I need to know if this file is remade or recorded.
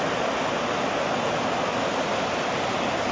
recorded